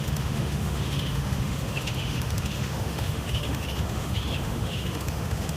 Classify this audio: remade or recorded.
remade